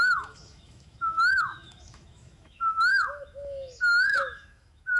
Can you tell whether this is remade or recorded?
remade